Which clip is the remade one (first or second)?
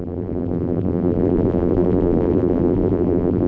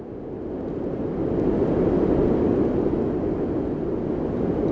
first